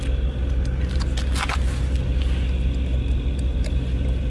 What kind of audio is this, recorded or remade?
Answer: recorded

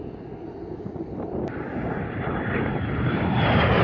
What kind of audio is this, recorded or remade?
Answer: recorded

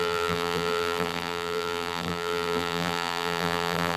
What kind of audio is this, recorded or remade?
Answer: remade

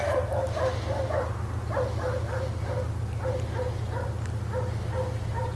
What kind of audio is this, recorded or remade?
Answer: recorded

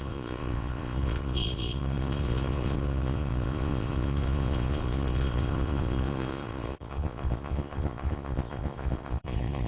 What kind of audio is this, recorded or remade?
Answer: remade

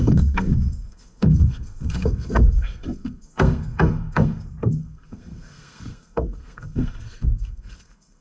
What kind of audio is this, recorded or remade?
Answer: remade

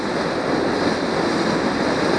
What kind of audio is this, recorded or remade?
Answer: recorded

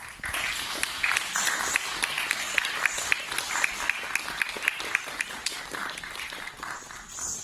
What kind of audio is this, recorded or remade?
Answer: recorded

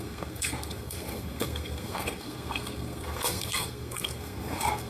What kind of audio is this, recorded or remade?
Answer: remade